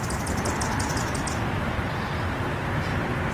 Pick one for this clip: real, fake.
real